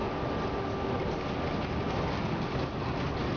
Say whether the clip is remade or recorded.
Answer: recorded